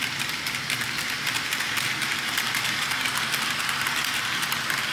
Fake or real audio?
fake